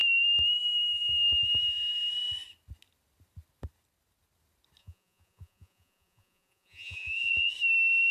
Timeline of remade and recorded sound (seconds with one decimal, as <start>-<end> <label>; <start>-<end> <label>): 0.0-4.8 recorded; 4.8-7.5 remade; 7.5-8.1 recorded